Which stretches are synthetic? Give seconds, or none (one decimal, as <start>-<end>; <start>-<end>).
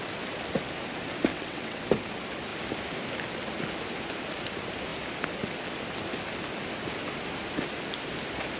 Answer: 1.3-1.9